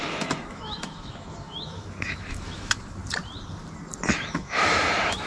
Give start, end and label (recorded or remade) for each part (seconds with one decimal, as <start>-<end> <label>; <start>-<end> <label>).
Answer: 0.0-3.0 remade; 3.0-4.1 recorded; 4.1-5.3 remade